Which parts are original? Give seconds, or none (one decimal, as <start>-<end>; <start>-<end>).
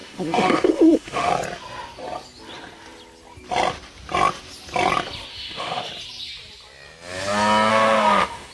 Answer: 1.3-5.3; 5.9-7.7